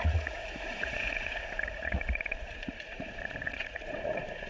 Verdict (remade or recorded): remade